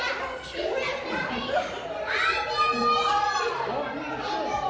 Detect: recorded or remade recorded